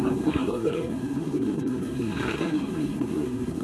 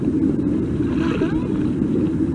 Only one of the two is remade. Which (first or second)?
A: first